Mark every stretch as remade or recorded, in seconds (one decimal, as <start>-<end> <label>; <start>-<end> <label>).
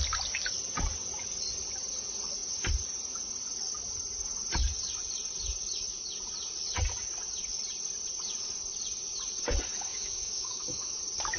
0.0-9.9 recorded; 9.9-11.0 remade; 11.0-11.4 recorded